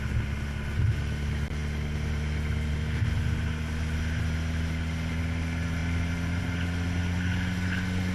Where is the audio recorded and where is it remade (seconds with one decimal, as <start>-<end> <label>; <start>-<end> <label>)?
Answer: 0.0-8.1 recorded